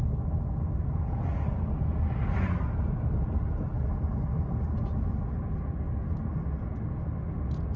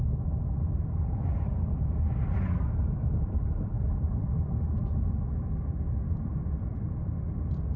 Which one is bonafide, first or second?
first